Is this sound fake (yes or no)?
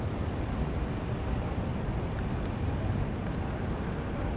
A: no